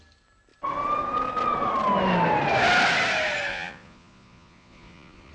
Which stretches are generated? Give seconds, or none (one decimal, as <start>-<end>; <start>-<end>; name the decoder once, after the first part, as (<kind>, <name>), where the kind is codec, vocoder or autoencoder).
3.5-5.3 (vocoder, Vocos)